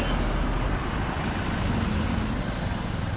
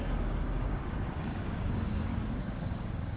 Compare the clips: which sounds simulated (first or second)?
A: second